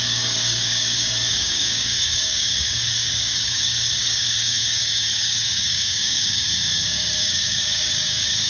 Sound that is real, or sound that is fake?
fake